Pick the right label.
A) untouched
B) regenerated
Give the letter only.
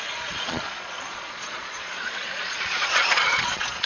B